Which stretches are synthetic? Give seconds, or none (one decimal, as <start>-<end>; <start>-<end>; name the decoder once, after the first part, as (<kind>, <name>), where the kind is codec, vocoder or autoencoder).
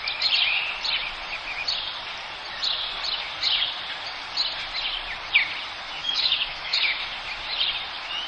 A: 6.0-7.0 (autoencoder, DAC-VAE)